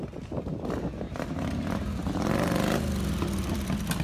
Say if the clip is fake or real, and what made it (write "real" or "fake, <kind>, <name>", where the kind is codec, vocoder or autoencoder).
real